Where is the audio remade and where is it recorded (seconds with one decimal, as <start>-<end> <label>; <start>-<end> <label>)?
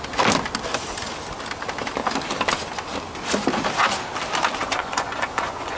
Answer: 0.0-4.6 recorded; 4.6-5.8 remade